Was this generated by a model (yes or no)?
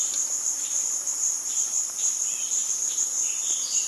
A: yes